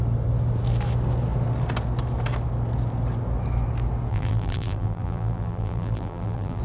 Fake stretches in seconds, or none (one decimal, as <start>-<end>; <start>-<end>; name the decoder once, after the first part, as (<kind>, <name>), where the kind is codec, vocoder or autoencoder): 4.1-6.6 (vocoder, BigVGAN v2)